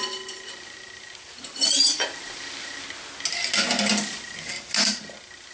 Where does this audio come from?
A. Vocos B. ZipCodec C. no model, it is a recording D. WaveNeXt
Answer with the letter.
C